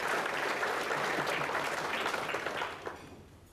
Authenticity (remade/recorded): recorded